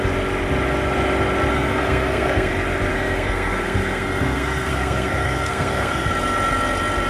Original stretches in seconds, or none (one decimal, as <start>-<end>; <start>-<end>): 0.0-1.5; 2.5-2.9; 6.1-7.1